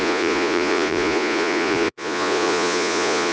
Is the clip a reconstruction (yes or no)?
yes